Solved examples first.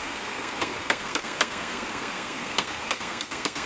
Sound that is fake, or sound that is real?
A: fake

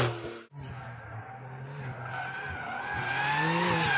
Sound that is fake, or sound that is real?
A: real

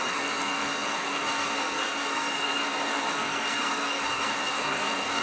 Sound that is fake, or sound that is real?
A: fake